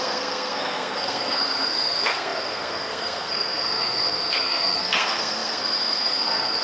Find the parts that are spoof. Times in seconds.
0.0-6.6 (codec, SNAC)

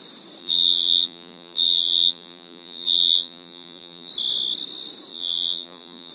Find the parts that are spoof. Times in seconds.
0.4-4.1 (vocoder, BigVGAN v2); 5.1-6.1

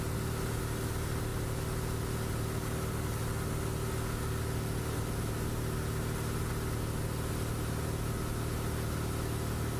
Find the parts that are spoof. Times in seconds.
none

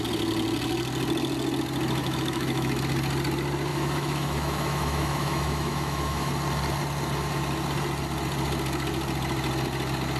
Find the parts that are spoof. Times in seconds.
2.0-2.8 (autoencoder, DAC-VAE); 3.7-6.3

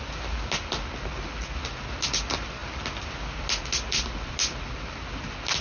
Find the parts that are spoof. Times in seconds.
none

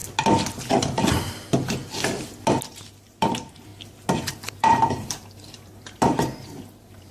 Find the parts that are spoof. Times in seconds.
0.8-1.8 (vocoder, BigVGAN v2); 2.7-3.7; 4.3-7.1

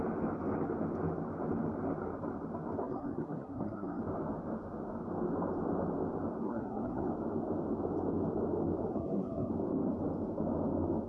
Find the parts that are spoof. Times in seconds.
2.8-4.0 (codec, SNAC); 6.4-7.1; 8.9-9.5